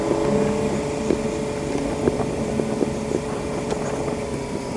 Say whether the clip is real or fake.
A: real